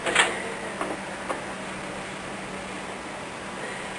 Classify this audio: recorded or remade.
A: recorded